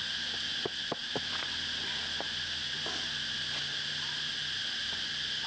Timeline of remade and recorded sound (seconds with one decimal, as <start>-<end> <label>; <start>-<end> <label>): 0.0-5.5 recorded